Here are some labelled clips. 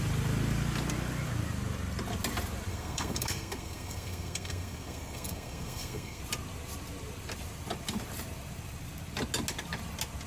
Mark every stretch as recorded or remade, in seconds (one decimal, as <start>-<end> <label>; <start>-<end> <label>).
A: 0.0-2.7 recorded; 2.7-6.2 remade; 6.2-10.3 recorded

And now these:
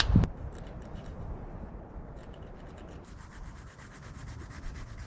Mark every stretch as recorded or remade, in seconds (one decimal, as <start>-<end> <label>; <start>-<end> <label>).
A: 0.0-5.1 recorded

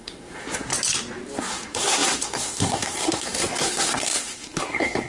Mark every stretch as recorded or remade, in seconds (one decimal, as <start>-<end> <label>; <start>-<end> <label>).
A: 0.0-0.7 remade; 0.7-1.4 recorded; 1.4-5.1 remade

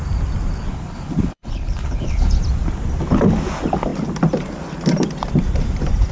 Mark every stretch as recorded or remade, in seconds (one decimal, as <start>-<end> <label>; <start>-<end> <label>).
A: 0.0-0.7 recorded; 0.7-2.4 remade; 2.4-6.1 recorded